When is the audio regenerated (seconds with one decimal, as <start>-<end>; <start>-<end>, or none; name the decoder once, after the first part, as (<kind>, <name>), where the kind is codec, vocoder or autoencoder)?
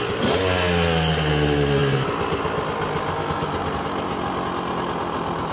none